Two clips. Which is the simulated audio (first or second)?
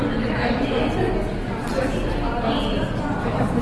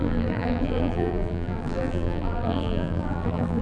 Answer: second